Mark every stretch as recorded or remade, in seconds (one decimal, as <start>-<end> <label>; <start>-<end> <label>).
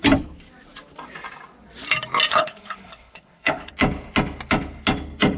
0.0-2.3 recorded; 2.3-3.7 remade; 3.7-5.4 recorded